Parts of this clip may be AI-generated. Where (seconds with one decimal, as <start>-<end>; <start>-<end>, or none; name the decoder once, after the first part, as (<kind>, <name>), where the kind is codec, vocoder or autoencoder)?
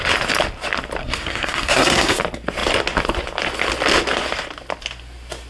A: 1.0-2.2 (codec, SNAC)